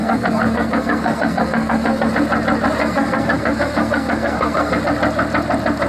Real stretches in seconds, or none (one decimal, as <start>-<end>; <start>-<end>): 2.1-2.8; 4.8-5.9